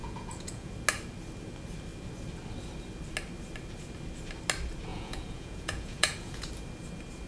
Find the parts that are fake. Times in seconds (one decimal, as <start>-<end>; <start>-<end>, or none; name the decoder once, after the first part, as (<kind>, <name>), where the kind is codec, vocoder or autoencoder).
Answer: 0.0-0.7 (vocoder, Vocos); 4.9-6.5